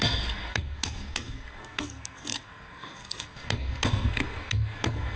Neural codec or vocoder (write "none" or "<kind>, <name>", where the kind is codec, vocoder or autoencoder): codec, SNAC